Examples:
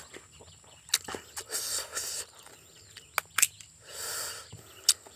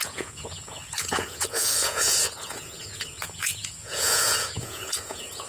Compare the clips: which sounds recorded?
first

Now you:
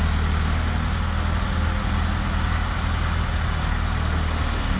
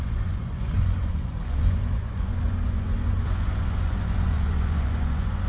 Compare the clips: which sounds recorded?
first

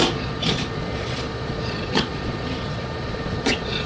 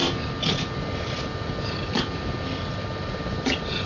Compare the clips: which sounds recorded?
second